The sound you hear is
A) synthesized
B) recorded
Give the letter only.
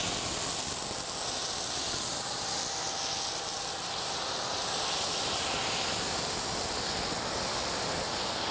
B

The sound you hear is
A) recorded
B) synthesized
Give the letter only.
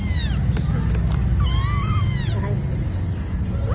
A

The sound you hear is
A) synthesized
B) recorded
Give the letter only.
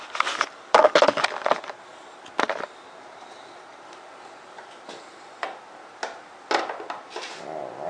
B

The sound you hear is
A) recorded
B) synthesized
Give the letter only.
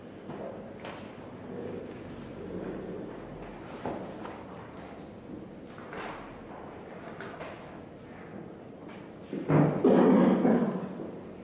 A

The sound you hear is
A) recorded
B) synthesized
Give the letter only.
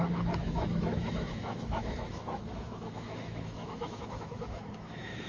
B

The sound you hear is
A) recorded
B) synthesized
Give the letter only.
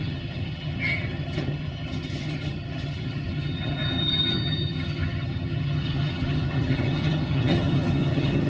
B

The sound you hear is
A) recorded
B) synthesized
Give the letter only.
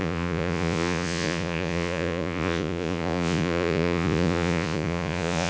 B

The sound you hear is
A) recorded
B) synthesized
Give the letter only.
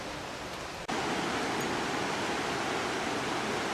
A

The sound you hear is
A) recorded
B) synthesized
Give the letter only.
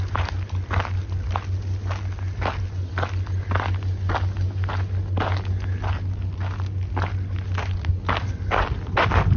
A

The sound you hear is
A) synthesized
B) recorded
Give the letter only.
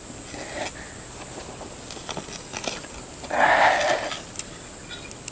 B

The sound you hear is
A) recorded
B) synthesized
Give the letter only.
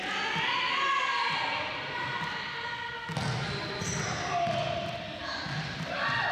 A